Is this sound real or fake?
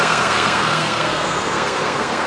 fake